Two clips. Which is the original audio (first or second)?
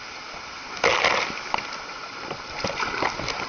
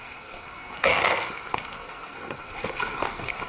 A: first